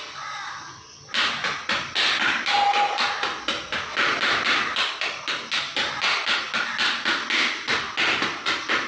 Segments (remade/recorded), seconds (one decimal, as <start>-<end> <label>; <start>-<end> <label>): 0.0-8.9 recorded